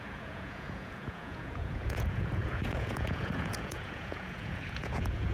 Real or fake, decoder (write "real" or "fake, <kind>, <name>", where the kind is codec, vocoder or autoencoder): fake, vocoder, Vocos